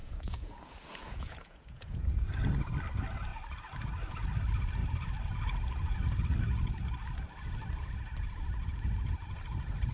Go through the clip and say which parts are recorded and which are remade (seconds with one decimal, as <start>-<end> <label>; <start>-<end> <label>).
0.0-2.3 remade; 2.3-9.9 recorded